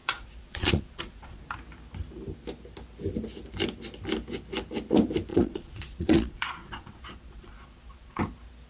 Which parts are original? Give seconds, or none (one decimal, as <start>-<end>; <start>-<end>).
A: 1.4-5.3; 8.2-8.7